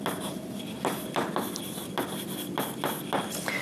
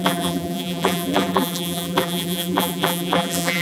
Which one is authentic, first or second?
first